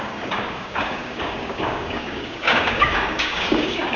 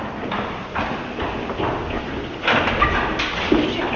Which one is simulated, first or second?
first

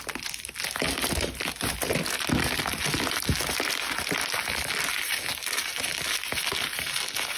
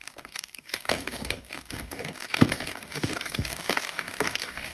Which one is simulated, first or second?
second